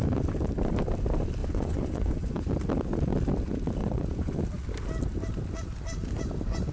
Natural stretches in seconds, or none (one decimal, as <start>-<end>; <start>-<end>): 0.0-1.4; 2.5-3.8; 4.4-6.7